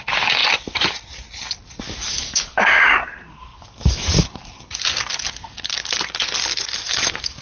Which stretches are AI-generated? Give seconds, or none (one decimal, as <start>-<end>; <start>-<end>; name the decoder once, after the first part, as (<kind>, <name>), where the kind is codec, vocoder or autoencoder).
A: none